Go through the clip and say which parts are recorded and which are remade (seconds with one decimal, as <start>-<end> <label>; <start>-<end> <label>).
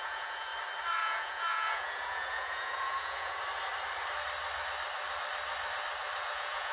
0.0-0.5 remade; 0.5-1.0 recorded; 1.0-3.4 remade; 3.4-6.3 recorded; 6.3-6.7 remade